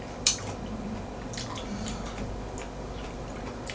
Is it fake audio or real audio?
real